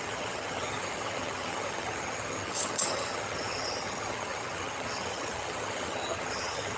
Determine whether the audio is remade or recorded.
remade